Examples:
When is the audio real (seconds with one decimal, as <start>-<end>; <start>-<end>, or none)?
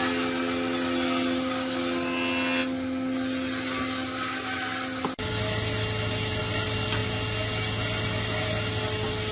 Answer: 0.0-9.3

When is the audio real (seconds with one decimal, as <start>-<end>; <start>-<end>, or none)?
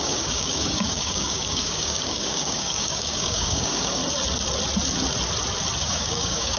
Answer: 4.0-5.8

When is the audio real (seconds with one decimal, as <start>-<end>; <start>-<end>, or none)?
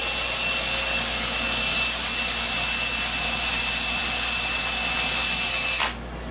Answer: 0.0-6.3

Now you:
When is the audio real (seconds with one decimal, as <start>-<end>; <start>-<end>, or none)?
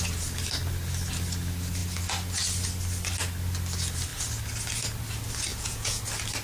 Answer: 0.0-5.5; 6.0-6.4